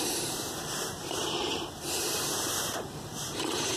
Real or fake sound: fake